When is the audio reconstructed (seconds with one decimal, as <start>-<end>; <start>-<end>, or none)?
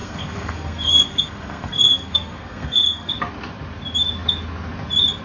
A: 0.0-3.1